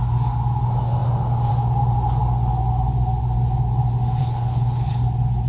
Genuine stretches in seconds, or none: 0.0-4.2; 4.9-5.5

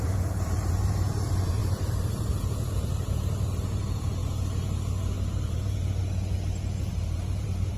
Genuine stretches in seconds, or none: 4.2-5.3; 6.0-6.9

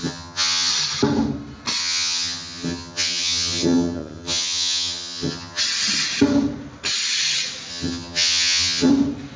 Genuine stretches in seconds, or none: 0.7-1.8; 5.6-7.7; 8.9-9.4

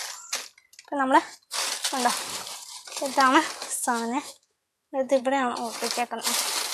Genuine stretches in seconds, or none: 0.0-3.6; 5.2-6.7

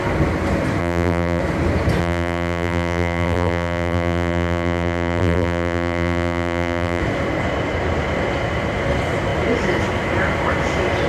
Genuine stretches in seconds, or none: 0.0-0.8; 1.4-2.0; 7.0-11.1